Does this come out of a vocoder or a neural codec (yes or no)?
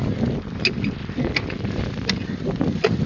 no